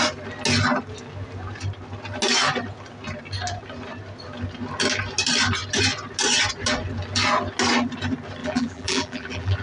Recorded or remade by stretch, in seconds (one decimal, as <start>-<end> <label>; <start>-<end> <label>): 0.0-8.4 recorded; 8.4-9.6 remade